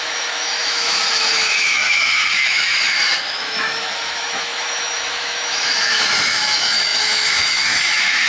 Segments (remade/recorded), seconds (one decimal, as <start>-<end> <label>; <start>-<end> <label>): 0.0-8.3 remade